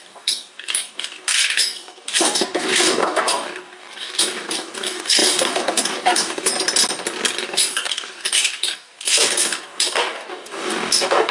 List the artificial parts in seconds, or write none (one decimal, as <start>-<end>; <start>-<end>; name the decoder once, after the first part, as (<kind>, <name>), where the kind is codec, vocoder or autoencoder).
0.0-6.5 (codec, DAC); 7.4-11.3